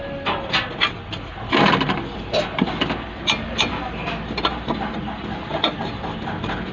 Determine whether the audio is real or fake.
real